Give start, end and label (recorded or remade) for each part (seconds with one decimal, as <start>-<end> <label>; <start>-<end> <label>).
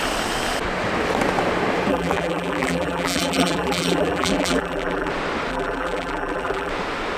0.0-1.9 recorded; 1.9-5.1 remade; 5.1-5.5 recorded; 5.5-6.7 remade; 6.7-7.2 recorded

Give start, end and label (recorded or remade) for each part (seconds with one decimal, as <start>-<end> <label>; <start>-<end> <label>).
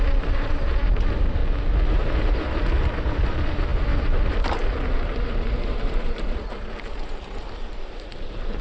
0.0-1.4 remade; 1.4-1.9 recorded; 1.9-8.6 remade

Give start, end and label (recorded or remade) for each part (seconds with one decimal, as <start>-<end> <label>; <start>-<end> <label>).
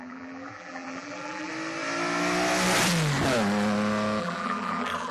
0.0-1.5 remade; 1.5-4.2 recorded; 4.2-5.1 remade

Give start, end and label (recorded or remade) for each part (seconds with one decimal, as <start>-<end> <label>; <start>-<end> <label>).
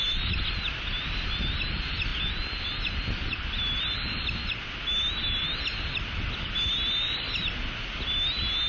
0.0-8.7 recorded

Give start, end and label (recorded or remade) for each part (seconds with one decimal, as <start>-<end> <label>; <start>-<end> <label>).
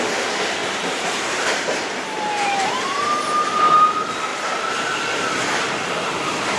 0.0-0.6 recorded; 0.6-3.1 remade; 3.1-4.3 recorded; 4.3-5.9 remade; 5.9-6.6 recorded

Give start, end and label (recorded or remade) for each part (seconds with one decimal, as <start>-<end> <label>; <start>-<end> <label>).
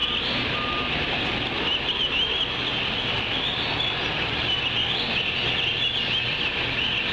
0.0-7.1 recorded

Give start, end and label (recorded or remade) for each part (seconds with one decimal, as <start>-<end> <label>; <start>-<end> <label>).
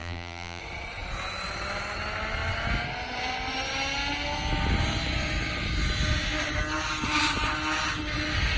0.0-0.6 remade; 0.6-8.6 recorded